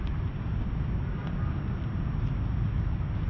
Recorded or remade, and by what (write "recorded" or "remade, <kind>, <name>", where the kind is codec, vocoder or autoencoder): recorded